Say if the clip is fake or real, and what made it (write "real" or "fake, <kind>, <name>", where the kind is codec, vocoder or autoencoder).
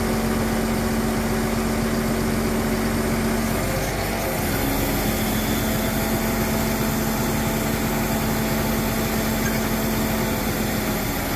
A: real